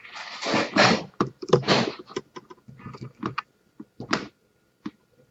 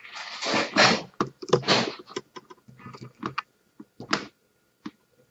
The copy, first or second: first